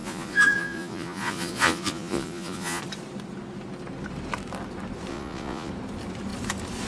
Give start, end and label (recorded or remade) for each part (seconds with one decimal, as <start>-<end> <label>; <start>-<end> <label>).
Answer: 0.0-2.8 remade; 2.8-5.1 recorded; 5.1-5.7 remade; 5.7-6.9 recorded